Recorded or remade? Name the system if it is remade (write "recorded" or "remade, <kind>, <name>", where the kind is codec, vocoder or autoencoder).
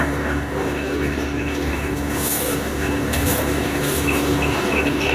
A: remade, codec, DAC